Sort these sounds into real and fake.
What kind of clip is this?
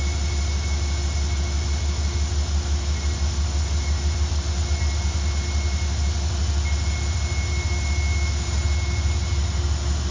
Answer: real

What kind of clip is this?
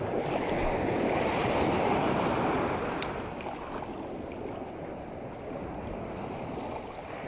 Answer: real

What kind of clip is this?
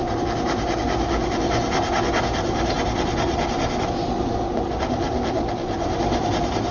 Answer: real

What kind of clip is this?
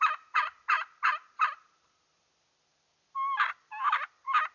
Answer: real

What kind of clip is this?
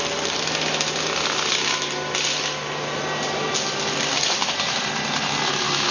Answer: real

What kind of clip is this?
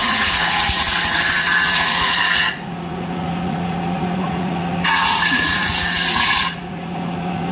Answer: fake